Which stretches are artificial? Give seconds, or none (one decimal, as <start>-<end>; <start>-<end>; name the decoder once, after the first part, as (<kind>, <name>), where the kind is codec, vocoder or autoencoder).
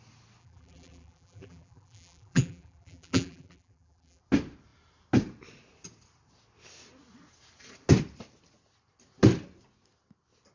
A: 0.4-4.2 (vocoder, BigVGAN v2)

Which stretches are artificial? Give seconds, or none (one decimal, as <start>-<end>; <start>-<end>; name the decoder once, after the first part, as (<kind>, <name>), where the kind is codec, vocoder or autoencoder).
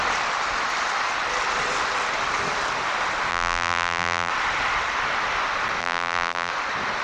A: 3.3-4.3 (vocoder, BigVGAN v2); 5.8-6.5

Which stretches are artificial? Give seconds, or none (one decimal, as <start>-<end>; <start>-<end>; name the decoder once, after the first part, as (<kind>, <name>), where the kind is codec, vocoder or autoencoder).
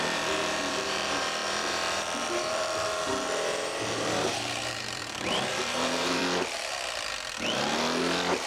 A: 0.0-6.2 (vocoder, BigVGAN v2)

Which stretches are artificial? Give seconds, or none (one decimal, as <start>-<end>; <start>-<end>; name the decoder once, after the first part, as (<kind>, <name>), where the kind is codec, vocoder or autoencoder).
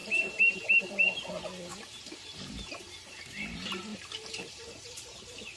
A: 0.0-0.8 (vocoder, BigVGAN v2); 1.7-2.8; 3.9-5.6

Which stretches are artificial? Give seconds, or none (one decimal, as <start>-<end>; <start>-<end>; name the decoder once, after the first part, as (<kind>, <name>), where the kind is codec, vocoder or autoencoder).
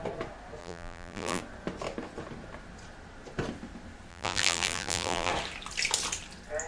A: 0.6-1.4 (vocoder, BigVGAN v2); 4.1-5.3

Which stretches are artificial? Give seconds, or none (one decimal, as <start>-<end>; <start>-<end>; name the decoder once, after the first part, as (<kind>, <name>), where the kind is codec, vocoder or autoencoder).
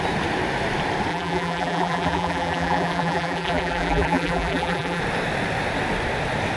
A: 1.1-5.0 (vocoder, BigVGAN v2)